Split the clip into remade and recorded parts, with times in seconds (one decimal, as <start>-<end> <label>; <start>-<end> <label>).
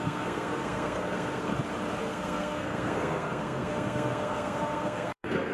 0.0-1.5 remade; 1.5-2.0 recorded; 2.0-5.5 remade